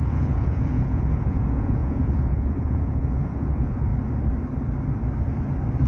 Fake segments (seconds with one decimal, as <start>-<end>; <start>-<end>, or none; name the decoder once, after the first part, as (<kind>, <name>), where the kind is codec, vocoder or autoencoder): 0.0-3.9 (vocoder, Vocos)